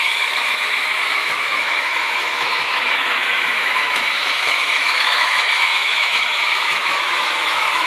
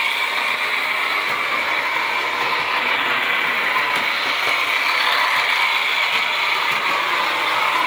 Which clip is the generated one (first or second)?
first